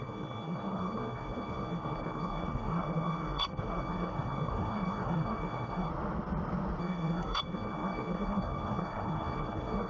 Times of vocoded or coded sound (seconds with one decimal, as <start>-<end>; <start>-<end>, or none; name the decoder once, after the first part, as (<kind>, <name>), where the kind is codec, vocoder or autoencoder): 0.0-5.9 (codec, SNAC); 6.8-9.9